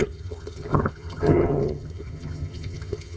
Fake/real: fake